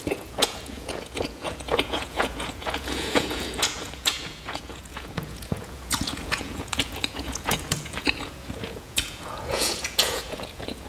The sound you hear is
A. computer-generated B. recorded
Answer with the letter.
A